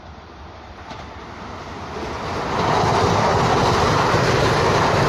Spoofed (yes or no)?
no